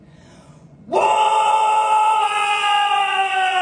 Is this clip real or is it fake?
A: fake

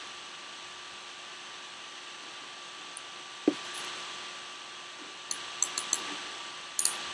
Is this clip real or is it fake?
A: real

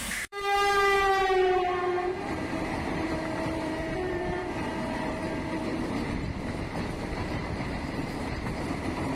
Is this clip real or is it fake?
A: fake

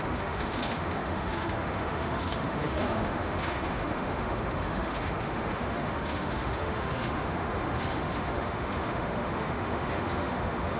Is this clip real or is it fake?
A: fake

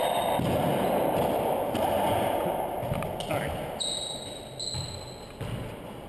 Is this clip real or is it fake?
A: real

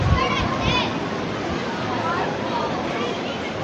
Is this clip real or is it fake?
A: fake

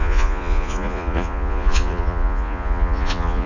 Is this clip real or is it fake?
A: fake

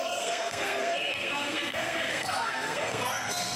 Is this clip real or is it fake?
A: fake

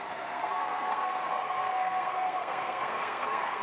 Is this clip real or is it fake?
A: fake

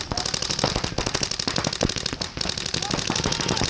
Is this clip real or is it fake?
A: real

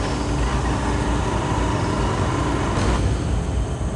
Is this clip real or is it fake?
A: real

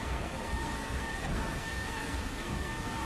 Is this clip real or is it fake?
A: fake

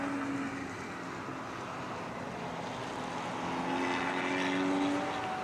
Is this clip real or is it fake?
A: real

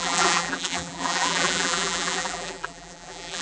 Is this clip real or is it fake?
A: fake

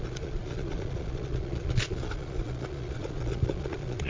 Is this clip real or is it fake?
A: fake